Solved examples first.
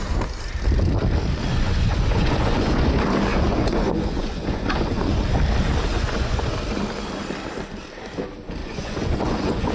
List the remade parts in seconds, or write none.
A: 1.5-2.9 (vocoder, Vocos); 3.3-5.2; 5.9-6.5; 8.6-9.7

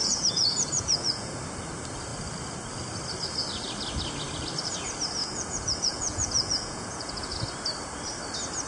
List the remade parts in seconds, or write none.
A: 0.0-1.4 (vocoder, Vocos); 5.2-7.2